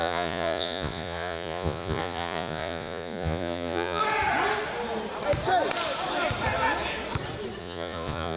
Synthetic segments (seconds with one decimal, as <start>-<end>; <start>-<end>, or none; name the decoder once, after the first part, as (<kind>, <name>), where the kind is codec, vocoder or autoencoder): 0.0-4.0 (vocoder, Vocos); 7.6-8.4